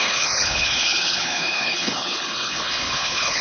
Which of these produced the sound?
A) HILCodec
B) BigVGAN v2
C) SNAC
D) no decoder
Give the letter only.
A